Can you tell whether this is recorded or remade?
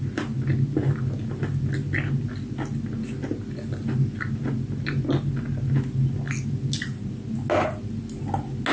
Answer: recorded